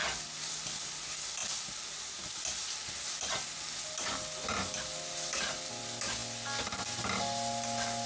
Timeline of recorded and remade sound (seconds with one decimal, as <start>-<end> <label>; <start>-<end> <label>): 0.0-8.1 recorded